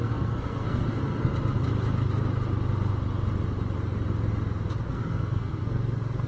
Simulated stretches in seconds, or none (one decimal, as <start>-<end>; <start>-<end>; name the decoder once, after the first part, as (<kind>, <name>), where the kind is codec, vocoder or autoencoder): 0.0-1.3 (codec, SNAC); 4.9-6.3